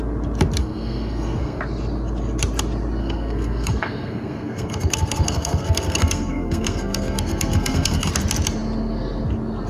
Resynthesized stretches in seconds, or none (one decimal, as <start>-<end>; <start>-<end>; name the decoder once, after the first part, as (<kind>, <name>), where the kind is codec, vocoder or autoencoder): 0.6-1.6 (codec, SNAC); 3.0-8.1